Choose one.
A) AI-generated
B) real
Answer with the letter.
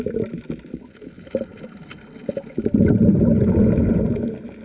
B